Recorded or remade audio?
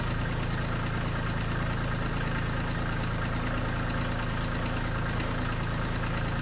recorded